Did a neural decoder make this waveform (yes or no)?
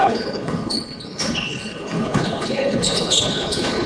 yes